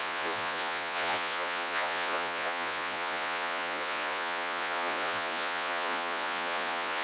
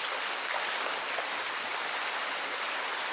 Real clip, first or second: second